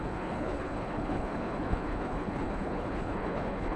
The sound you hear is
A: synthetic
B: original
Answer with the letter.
A